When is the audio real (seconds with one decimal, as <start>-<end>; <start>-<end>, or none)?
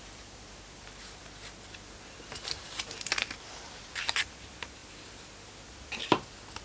0.0-6.6